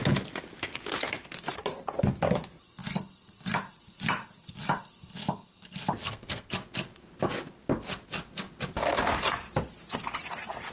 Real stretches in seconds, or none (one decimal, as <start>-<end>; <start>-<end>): 0.0-6.0; 6.5-10.7